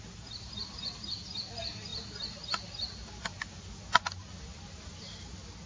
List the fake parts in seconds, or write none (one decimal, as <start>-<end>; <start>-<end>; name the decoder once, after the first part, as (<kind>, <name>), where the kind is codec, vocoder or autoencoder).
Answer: none